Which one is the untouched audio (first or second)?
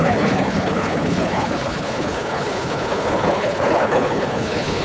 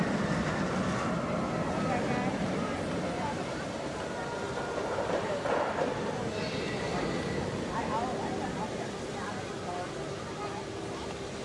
second